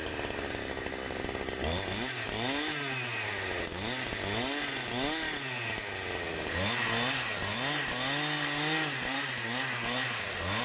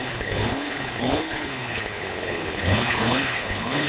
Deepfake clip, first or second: second